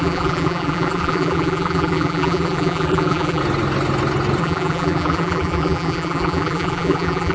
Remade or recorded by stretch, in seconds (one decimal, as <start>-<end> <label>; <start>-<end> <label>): 0.0-3.4 remade; 3.4-4.4 recorded; 4.4-7.3 remade